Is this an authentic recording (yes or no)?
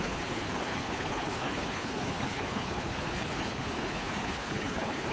no